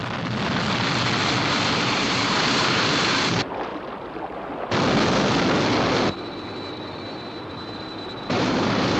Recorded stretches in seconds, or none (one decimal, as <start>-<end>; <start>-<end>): 0.0-1.5; 3.7-7.5